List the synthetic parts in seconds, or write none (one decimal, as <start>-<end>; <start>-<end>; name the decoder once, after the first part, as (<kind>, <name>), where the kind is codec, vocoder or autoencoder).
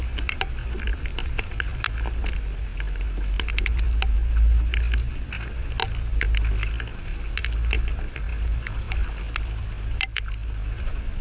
none